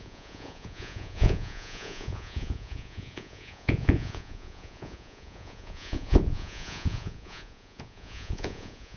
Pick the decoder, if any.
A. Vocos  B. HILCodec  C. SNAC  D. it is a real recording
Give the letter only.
A